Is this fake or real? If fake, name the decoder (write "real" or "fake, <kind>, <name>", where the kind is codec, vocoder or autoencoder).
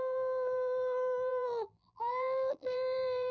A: fake, vocoder, BigVGAN v2